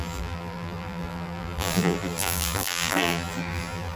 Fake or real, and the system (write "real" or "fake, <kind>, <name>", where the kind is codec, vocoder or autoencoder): fake, vocoder, BigVGAN v2